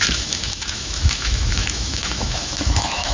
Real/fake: fake